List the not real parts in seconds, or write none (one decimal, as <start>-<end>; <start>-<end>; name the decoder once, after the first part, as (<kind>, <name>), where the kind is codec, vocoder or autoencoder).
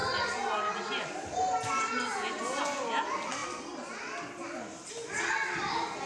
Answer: none